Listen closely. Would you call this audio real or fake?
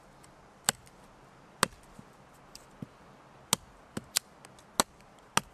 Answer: real